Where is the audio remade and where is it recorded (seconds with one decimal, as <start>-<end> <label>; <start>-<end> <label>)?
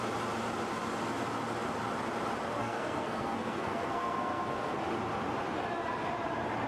0.0-2.6 recorded; 2.6-4.8 remade; 4.8-6.7 recorded